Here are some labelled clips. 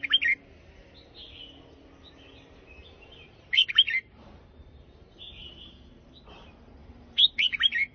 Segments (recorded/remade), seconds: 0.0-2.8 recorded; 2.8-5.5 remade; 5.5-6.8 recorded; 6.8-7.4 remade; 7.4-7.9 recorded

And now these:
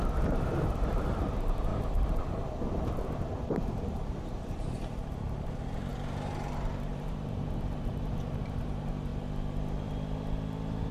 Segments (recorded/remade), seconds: 0.0-1.7 remade; 1.7-3.7 recorded; 3.7-5.9 remade; 5.9-6.5 recorded; 6.5-9.1 remade; 9.1-10.9 recorded

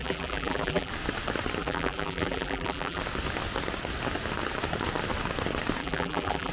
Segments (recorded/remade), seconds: 0.0-0.9 remade; 0.9-1.6 recorded; 1.6-3.0 remade; 3.0-5.8 recorded; 5.8-6.5 remade

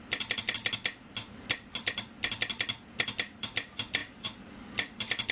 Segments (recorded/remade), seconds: 0.0-0.6 remade; 0.6-3.0 recorded; 3.0-5.3 remade

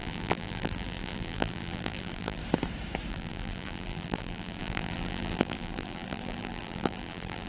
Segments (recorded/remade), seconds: 0.0-2.4 remade; 2.4-3.1 recorded; 3.1-7.5 remade

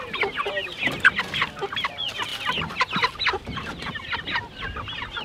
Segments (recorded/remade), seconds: 0.0-2.3 recorded; 2.3-3.9 remade; 3.9-5.2 recorded